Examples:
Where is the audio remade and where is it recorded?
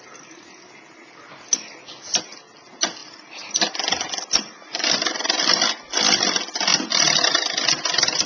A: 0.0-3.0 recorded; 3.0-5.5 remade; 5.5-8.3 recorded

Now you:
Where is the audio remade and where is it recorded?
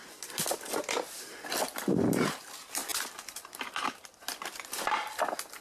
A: 0.0-0.8 remade; 0.8-2.8 recorded; 2.8-3.4 remade; 3.4-5.6 recorded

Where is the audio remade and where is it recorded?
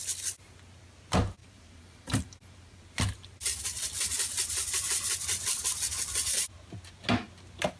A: 0.0-1.4 recorded; 1.4-2.8 remade; 2.8-7.8 recorded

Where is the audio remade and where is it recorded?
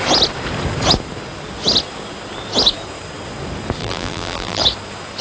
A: 0.0-3.8 recorded; 3.8-4.6 remade; 4.6-5.2 recorded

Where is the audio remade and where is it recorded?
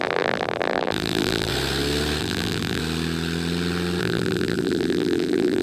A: 0.0-1.5 remade; 1.5-2.2 recorded; 2.2-2.8 remade; 2.8-4.0 recorded; 4.0-5.6 remade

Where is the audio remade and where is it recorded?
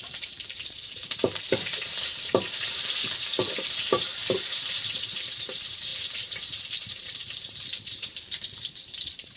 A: 0.0-4.1 remade; 4.1-4.7 recorded; 4.7-9.4 remade